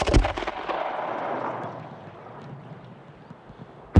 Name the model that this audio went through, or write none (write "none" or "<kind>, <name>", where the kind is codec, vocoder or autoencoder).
none